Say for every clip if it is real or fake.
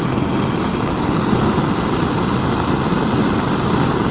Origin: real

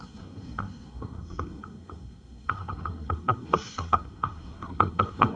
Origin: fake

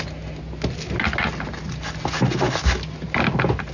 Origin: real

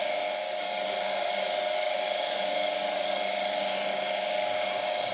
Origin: fake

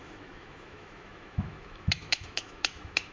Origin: fake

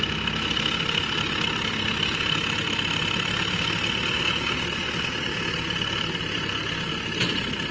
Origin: real